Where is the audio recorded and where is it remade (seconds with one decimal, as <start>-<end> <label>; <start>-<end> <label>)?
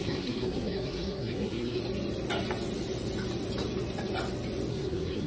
0.0-1.8 remade; 1.8-4.7 recorded; 4.7-5.3 remade